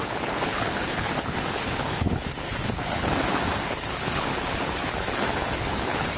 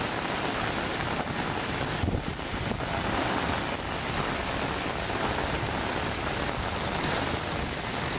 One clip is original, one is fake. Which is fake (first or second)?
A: first